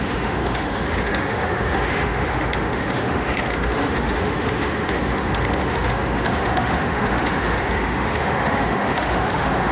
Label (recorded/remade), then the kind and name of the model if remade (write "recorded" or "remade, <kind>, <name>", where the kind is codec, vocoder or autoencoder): remade, autoencoder, DAC-VAE